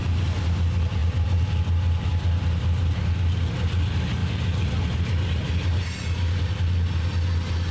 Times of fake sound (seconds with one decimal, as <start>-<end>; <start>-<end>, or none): 1.0-1.6; 4.2-4.9